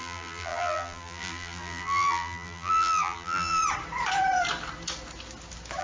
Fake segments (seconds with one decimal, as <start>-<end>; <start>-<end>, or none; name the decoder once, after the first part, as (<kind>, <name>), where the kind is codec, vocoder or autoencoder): 0.0-3.6 (vocoder, BigVGAN v2)